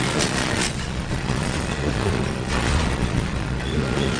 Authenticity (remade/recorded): remade